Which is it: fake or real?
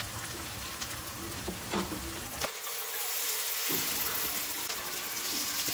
real